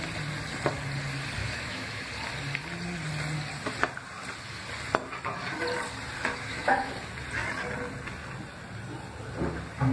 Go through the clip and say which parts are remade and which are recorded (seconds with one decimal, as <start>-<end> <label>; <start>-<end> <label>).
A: 0.0-1.4 recorded; 1.4-2.0 remade; 2.0-6.3 recorded; 6.3-6.9 remade; 6.9-9.9 recorded